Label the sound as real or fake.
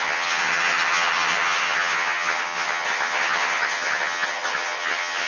fake